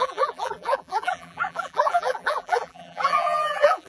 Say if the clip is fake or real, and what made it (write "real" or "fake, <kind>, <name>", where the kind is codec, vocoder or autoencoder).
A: fake, vocoder, BigVGAN v2